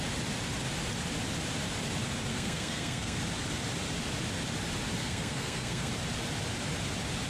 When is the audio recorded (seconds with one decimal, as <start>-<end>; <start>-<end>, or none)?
0.0-2.3; 3.2-5.0; 5.9-7.3